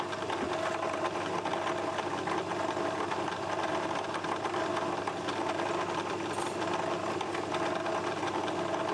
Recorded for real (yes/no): yes